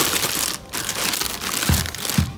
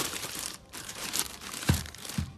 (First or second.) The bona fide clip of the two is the first